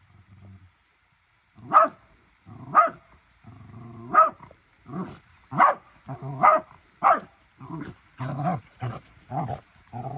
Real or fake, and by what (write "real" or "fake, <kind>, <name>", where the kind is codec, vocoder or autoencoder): fake, vocoder, BigVGAN v2